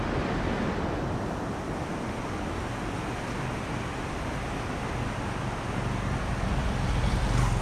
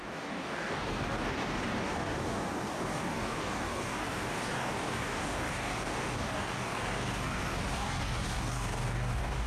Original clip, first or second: first